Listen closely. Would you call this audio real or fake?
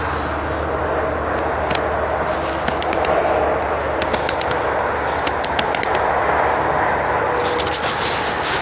real